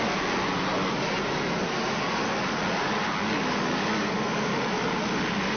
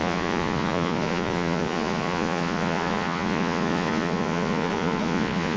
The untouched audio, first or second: first